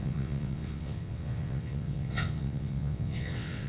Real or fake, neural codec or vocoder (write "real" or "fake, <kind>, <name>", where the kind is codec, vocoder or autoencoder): fake, vocoder, WaveNeXt